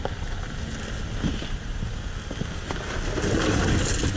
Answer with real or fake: real